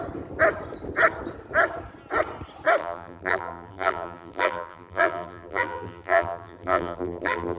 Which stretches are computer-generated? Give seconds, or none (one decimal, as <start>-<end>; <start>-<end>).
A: 2.8-7.6